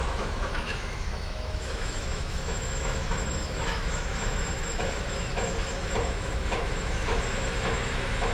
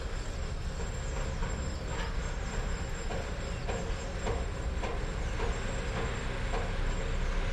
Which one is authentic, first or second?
second